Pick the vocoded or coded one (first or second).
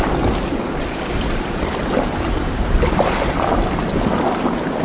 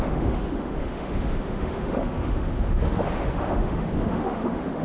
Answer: second